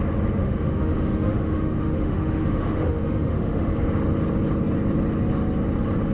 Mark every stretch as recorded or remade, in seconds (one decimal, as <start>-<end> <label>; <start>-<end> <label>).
0.0-0.4 recorded; 0.4-3.7 remade; 3.7-6.1 recorded